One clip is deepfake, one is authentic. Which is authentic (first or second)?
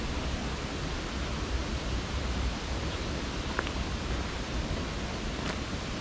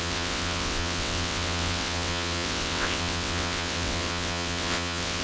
first